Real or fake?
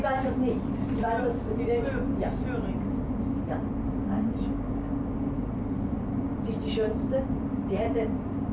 real